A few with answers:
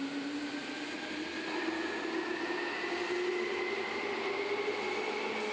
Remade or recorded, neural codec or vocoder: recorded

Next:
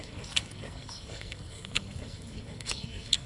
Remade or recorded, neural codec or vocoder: remade, codec, SNAC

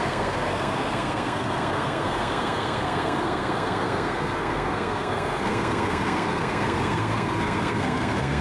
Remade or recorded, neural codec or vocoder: remade, codec, SNAC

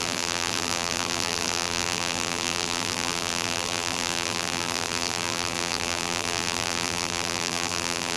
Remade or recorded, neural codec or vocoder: remade, vocoder, BigVGAN v2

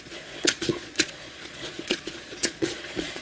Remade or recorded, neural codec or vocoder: remade, vocoder, Vocos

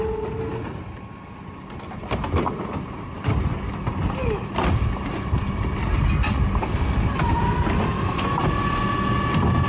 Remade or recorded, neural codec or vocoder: recorded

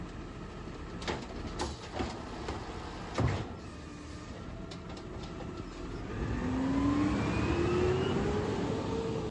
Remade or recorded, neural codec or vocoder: recorded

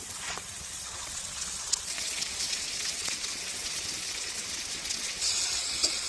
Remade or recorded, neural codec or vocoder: remade, vocoder, WaveNeXt